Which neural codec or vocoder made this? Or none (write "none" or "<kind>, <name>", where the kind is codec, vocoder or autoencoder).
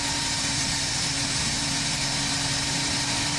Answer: vocoder, BigVGAN v2